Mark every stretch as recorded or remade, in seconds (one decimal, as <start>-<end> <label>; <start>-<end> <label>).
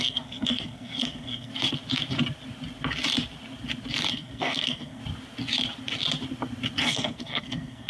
0.0-1.5 remade; 1.5-4.1 recorded; 4.1-5.0 remade; 5.0-6.8 recorded; 6.8-7.9 remade